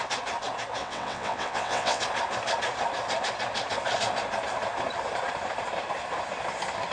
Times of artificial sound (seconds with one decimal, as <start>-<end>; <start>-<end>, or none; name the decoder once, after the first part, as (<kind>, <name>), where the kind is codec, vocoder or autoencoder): 0.8-2.0 (vocoder, WaveNeXt)